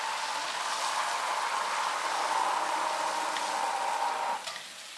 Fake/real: real